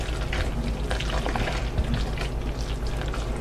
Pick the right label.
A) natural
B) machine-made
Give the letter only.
A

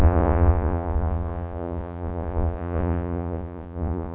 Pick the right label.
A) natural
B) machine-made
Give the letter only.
B